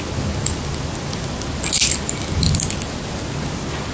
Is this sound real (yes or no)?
yes